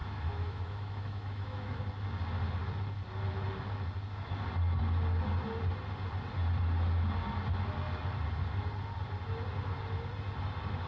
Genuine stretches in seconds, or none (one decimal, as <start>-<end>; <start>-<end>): 1.8-10.9